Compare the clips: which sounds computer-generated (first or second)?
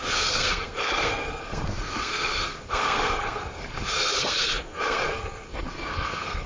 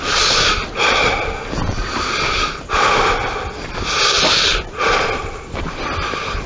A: first